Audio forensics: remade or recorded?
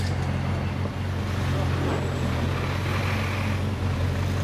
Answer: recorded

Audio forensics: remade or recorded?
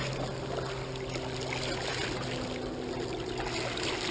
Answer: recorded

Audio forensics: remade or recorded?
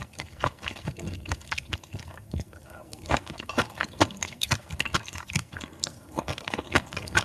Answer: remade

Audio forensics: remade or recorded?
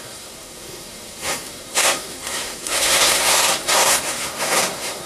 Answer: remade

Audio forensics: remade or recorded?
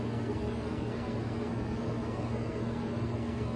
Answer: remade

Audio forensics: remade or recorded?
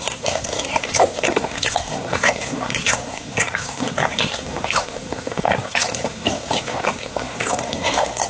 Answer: remade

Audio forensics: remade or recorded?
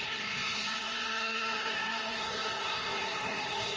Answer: remade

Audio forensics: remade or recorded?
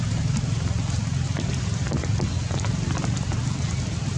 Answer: recorded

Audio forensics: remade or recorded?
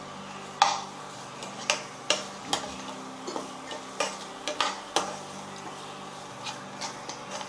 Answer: recorded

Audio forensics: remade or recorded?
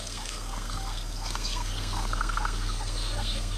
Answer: remade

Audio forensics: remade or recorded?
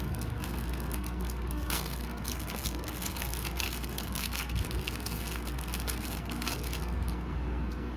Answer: remade